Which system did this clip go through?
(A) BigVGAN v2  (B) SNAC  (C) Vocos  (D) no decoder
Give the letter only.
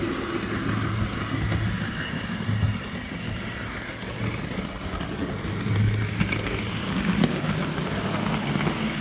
D